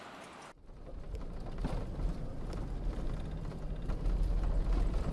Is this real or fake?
real